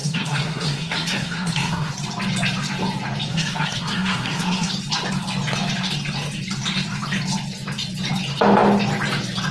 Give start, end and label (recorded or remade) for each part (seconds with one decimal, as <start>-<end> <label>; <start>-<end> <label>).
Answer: 0.0-1.9 remade; 1.9-3.3 recorded; 3.3-4.7 remade; 4.7-9.5 recorded